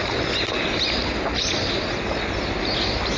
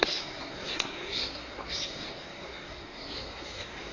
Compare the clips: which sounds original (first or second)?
first